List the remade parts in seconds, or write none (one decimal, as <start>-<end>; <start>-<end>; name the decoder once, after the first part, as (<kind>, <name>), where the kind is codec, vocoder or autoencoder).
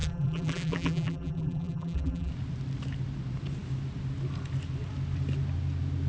0.0-2.3 (vocoder, BigVGAN v2)